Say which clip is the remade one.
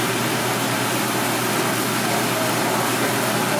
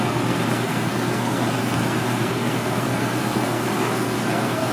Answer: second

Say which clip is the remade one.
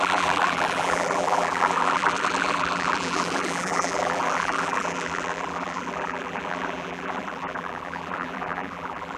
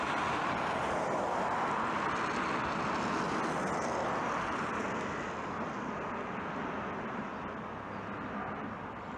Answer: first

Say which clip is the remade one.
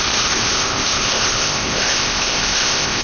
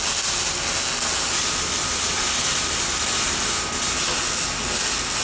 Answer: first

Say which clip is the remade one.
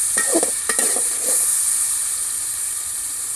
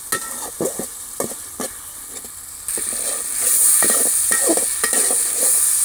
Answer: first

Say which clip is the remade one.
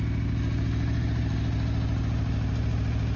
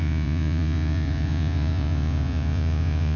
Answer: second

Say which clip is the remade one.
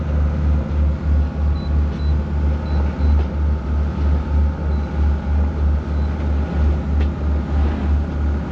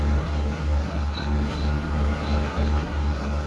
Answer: second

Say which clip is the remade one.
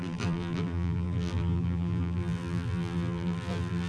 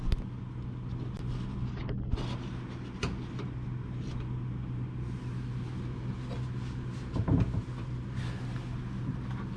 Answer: first